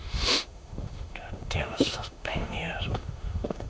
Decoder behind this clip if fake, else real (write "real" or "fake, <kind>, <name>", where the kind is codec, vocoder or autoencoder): fake, autoencoder, DAC-VAE